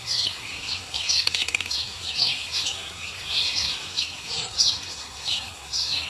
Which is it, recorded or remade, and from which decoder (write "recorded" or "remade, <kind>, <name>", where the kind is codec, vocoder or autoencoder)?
remade, codec, SNAC